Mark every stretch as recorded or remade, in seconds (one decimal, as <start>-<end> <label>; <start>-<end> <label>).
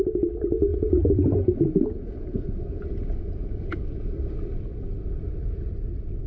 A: 0.0-0.7 recorded; 0.7-4.5 remade; 4.5-6.3 recorded